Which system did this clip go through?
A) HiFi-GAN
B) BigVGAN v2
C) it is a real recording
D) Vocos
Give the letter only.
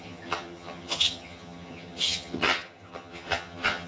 A